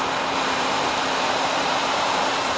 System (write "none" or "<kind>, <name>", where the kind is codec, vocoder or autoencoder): vocoder, BigVGAN v2